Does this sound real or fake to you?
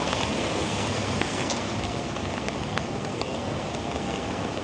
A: fake